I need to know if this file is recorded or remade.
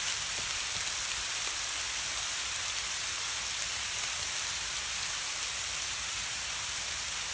remade